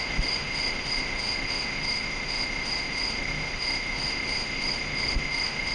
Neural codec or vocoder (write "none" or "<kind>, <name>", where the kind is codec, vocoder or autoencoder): autoencoder, DAC-VAE